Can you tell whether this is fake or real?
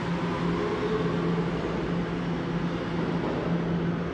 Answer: real